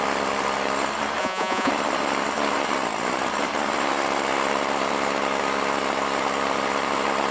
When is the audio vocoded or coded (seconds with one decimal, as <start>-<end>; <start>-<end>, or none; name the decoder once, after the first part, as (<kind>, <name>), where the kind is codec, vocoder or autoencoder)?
1.2-1.7 (vocoder, Vocos)